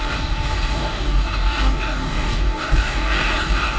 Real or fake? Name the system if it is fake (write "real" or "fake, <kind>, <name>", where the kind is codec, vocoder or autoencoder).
fake, codec, DAC